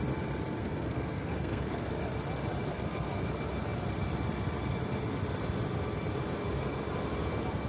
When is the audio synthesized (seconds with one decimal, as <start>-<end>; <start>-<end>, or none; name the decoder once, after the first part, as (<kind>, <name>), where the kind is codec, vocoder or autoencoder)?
0.6-1.9 (codec, SNAC); 2.7-3.3